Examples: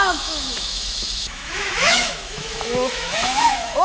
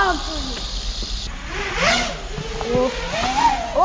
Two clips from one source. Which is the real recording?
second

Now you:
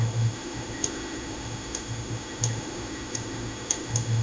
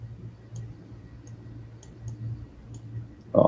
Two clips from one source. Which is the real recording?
second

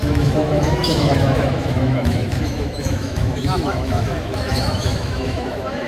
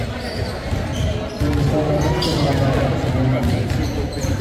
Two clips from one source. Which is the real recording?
second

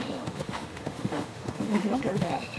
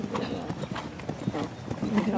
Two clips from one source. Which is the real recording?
second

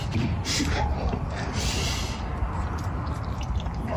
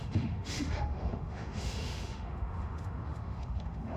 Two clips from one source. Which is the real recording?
first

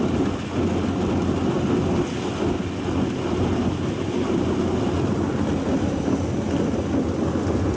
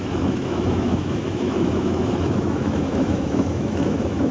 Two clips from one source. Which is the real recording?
first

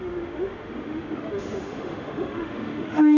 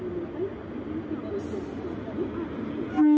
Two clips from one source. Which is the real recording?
second